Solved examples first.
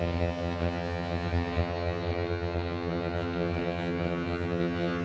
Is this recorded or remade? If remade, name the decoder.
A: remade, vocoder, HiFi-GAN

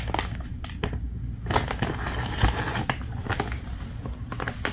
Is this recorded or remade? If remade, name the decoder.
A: recorded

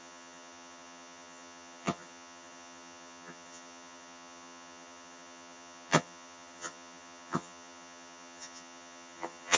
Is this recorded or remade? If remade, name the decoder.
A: remade, vocoder, HiFi-GAN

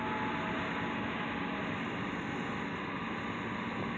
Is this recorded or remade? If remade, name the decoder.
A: recorded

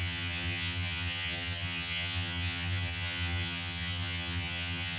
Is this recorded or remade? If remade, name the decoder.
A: remade, vocoder, HiFi-GAN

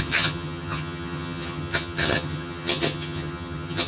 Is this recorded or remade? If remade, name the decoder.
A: remade, vocoder, HiFi-GAN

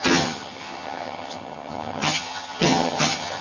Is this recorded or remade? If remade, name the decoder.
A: remade, vocoder, HiFi-GAN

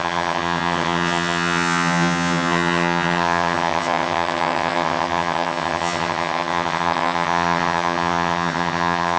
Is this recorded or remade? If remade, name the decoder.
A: remade, vocoder, HiFi-GAN